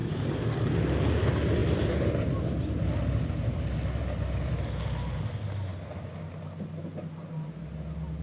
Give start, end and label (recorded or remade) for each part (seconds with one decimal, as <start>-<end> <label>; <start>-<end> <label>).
0.0-8.2 recorded